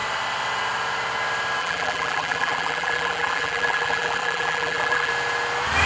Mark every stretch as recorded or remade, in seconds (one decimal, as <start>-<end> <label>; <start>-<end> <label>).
0.0-1.6 recorded; 1.6-5.1 remade; 5.1-5.9 recorded